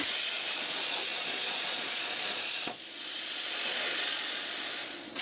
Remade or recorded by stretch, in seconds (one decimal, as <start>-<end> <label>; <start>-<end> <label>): 0.0-5.2 remade